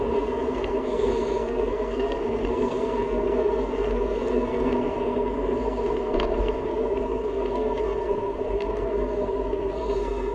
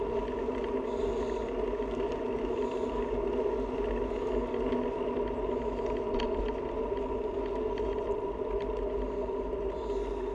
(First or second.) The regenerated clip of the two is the first